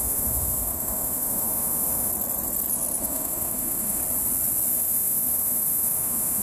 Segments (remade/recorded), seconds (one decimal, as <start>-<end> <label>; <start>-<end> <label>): 0.0-2.1 remade; 2.1-3.0 recorded; 3.0-4.0 remade; 4.0-4.7 recorded; 4.7-6.4 remade